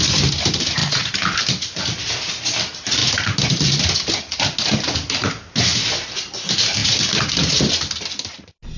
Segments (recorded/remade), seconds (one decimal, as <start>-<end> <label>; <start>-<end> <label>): 0.0-0.8 recorded; 0.8-2.3 remade; 2.3-3.0 recorded; 3.0-4.2 remade; 4.2-5.7 recorded; 5.7-6.2 remade; 6.2-8.8 recorded